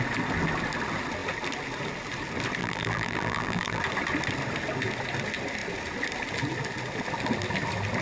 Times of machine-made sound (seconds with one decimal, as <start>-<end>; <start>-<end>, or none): 2.6-3.8